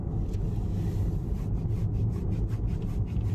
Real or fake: real